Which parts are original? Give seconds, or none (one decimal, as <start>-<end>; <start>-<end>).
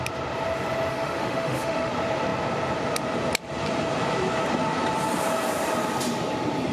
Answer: 0.0-0.9; 1.9-6.7